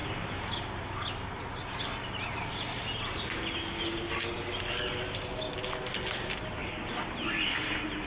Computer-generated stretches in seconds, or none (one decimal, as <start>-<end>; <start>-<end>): 6.6-7.3